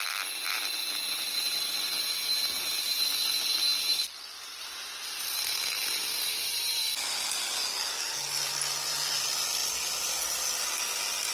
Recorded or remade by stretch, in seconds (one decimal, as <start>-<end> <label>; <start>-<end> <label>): 0.0-6.0 recorded; 6.0-6.8 remade; 6.8-11.3 recorded